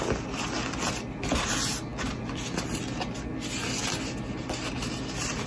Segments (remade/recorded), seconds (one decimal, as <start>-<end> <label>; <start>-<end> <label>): 0.0-5.5 recorded